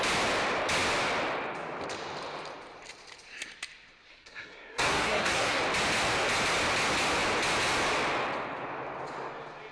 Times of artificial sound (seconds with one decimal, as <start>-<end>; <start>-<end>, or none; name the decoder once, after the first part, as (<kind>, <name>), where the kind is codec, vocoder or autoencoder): 4.1-5.6 (codec, SNAC)